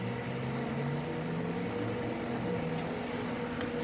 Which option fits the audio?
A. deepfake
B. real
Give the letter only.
B